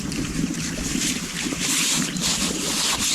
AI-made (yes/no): no